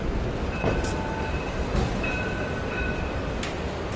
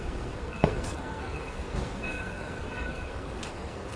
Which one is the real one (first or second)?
first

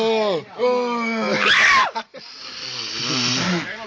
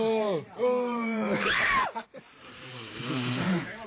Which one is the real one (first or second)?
first